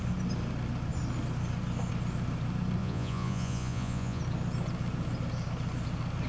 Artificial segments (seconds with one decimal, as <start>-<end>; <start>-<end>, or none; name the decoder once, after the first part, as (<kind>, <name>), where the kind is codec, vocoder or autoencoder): 2.8-4.2 (vocoder, Vocos)

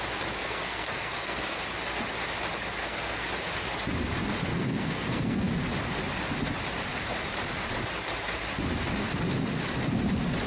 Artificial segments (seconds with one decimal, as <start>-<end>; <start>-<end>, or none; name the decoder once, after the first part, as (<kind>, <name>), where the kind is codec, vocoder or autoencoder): 0.4-1.6 (codec, SNAC); 2.8-3.3; 4.5-5.5

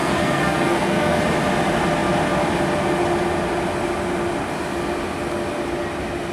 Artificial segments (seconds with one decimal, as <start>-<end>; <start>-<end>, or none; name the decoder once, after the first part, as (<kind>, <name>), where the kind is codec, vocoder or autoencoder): 0.0-1.2 (codec, SNAC)